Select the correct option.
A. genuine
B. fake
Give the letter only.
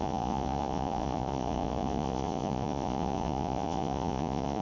B